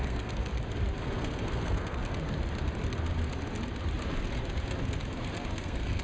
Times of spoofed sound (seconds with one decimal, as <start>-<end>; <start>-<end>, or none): 0.0-0.5; 1.0-2.0; 5.6-6.0

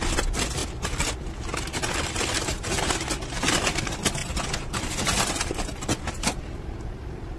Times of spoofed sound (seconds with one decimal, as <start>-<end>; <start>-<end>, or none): none